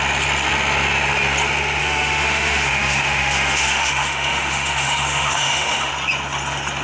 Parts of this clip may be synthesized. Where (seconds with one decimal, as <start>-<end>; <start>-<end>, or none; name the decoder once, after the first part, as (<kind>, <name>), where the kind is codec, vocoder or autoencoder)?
1.8-5.9 (autoencoder, DAC-VAE)